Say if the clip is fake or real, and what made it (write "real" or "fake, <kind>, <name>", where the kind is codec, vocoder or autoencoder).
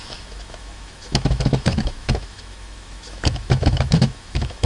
fake, autoencoder, DAC-VAE